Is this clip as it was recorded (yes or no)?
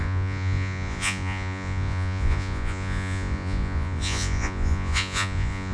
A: no